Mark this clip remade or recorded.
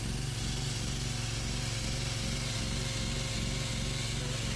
recorded